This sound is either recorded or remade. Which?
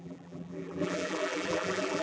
remade